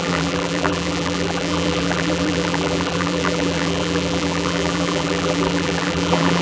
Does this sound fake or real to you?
fake